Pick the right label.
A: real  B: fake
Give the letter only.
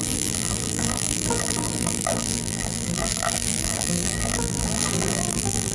B